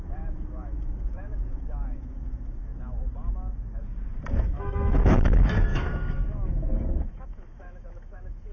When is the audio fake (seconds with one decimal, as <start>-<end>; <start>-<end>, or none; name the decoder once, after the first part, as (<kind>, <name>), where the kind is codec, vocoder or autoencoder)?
0.0-2.7 (autoencoder, DAC-VAE); 4.4-8.5